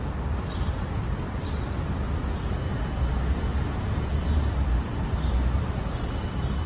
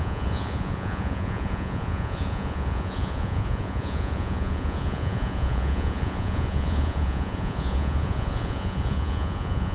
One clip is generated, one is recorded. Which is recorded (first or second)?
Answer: first